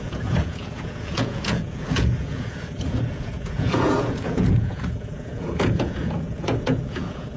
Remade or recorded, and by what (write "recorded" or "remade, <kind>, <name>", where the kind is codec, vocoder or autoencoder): remade, vocoder, Vocos